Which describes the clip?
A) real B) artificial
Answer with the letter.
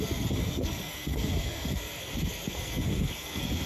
B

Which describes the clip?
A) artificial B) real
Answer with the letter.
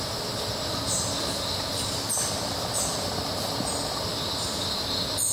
B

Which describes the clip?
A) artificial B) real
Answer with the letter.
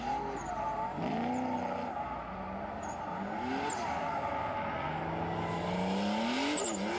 B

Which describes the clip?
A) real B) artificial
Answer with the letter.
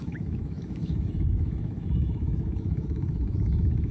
B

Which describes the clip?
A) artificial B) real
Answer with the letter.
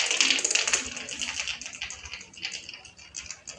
B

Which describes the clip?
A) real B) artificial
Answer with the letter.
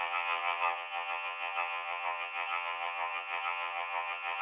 B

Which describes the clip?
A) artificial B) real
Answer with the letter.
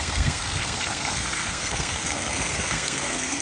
A